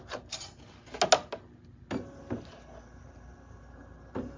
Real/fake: real